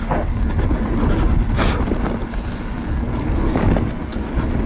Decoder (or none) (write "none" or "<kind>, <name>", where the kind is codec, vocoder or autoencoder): none